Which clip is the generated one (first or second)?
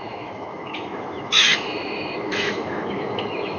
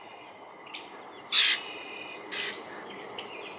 first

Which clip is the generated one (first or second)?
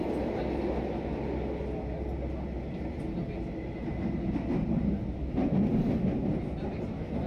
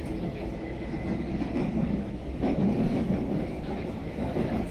second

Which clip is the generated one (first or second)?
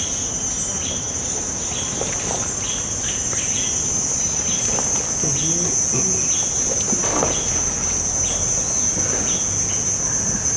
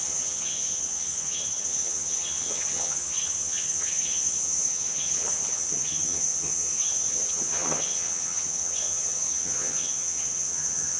second